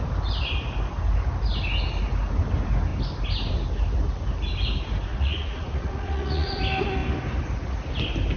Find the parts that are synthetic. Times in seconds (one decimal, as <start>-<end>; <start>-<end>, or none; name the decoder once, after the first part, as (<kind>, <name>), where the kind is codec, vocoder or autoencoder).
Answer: 5.1-6.6 (vocoder, Vocos)